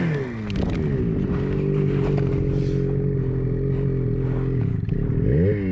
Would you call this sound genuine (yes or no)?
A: yes